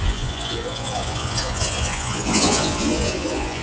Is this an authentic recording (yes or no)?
no